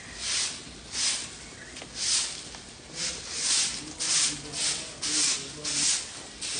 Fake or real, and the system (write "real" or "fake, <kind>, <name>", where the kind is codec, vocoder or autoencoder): real